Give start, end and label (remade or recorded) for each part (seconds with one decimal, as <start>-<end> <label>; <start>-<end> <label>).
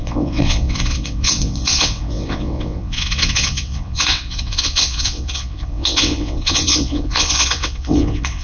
0.0-8.4 remade